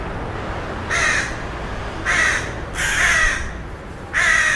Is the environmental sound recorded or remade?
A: recorded